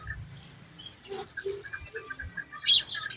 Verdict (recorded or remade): recorded